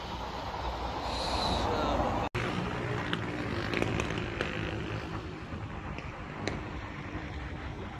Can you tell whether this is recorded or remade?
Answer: recorded